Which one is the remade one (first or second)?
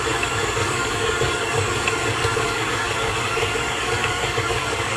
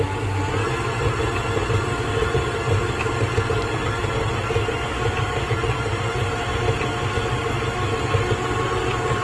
first